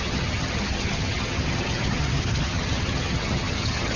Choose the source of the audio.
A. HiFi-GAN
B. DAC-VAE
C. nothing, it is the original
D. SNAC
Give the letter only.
A